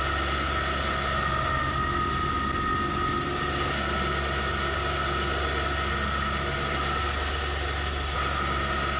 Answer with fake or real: real